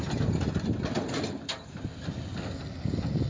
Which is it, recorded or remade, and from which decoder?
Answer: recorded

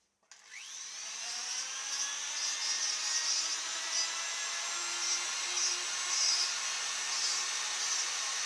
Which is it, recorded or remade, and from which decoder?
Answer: recorded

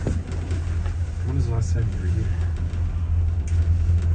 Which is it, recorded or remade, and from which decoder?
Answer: recorded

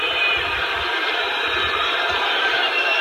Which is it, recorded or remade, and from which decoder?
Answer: remade, vocoder, BigVGAN v2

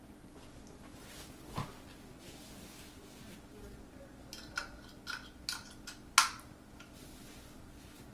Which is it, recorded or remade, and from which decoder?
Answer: recorded